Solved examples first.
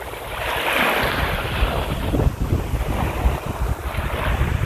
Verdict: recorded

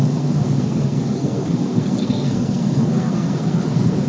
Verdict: remade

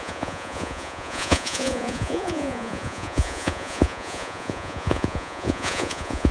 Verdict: remade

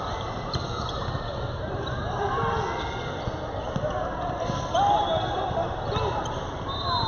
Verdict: recorded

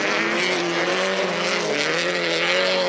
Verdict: recorded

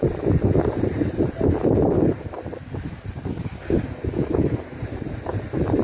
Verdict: recorded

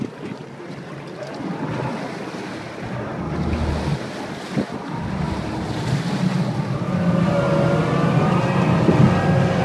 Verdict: recorded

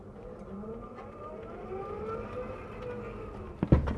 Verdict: recorded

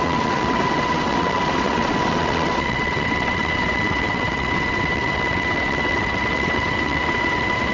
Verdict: remade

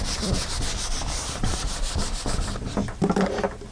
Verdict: recorded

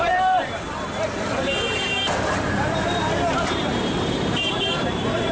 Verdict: remade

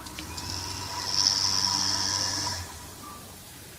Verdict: recorded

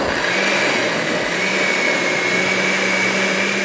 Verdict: recorded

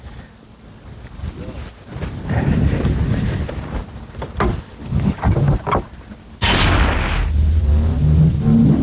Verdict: recorded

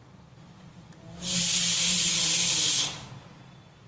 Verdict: recorded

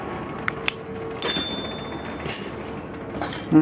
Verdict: recorded